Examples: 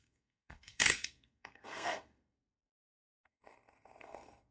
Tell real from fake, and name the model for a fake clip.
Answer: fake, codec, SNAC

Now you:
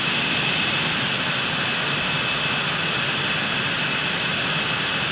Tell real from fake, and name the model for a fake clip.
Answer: real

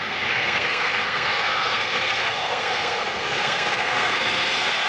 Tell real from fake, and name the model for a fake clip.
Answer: fake, codec, SNAC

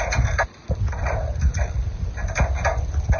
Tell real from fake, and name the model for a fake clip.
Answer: real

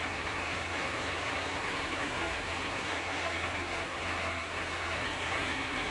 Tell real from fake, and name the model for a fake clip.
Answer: fake, codec, SNAC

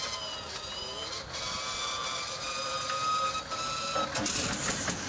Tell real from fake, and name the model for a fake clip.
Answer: real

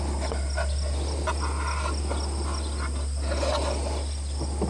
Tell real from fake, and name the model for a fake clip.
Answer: real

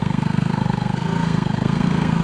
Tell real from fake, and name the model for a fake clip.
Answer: fake, codec, SNAC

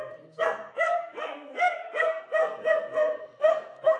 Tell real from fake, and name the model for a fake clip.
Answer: fake, codec, SNAC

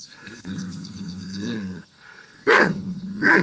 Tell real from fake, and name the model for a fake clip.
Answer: fake, codec, SNAC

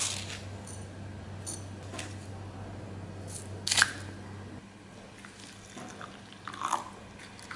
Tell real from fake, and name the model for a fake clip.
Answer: real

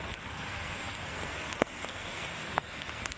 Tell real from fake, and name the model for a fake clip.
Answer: fake, codec, SNAC